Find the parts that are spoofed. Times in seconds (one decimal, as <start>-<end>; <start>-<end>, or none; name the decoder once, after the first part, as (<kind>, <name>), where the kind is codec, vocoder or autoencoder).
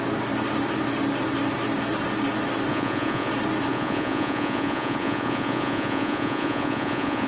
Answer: 2.7-3.3 (vocoder, Vocos); 3.7-7.3